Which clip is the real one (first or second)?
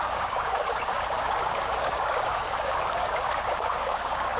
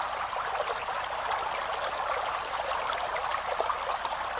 second